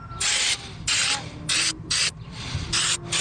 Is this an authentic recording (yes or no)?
no